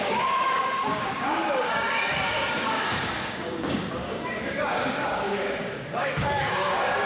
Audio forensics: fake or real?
fake